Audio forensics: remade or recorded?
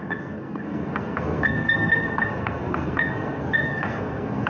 remade